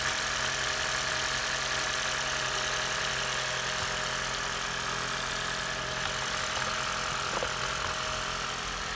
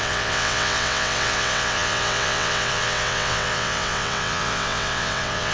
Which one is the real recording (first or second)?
first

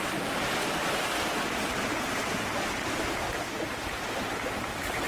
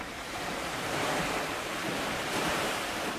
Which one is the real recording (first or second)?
first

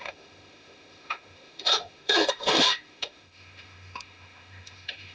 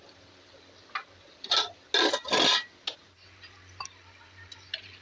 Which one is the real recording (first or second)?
second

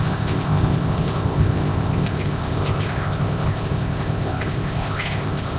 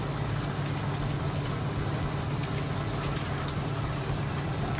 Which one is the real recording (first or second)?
second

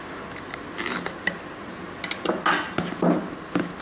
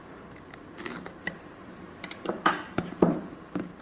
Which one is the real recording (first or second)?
first